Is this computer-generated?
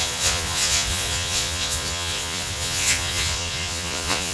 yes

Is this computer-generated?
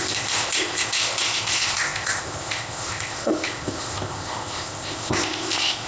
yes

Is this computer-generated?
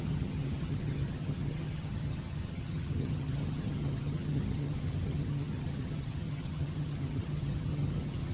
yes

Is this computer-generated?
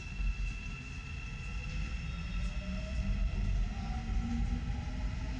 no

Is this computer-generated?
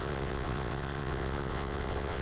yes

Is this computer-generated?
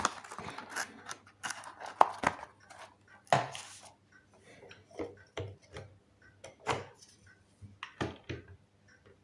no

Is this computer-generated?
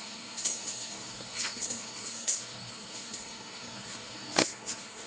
yes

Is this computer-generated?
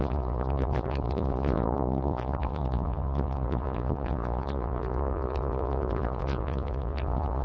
yes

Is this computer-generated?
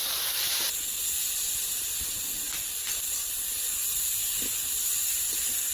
no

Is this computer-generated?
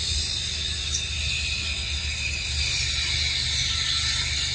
no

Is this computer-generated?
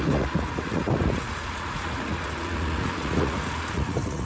yes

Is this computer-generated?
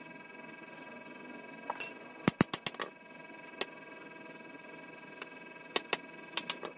no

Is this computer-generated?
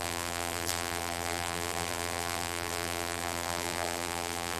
yes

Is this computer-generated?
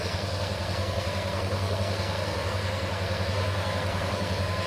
yes